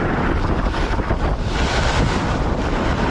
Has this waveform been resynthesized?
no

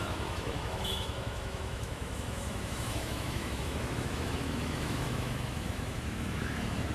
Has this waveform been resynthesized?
yes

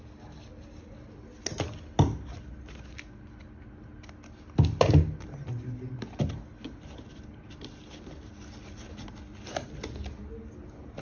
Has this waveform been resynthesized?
no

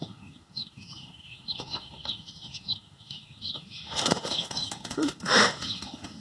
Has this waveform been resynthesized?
yes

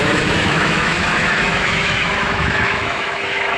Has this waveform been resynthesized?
yes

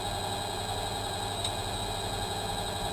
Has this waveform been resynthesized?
no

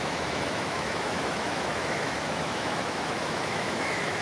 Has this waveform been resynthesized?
yes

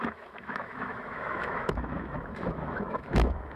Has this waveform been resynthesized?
yes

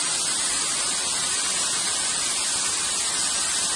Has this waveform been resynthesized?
no